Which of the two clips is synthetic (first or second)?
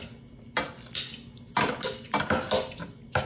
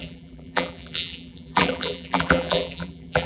second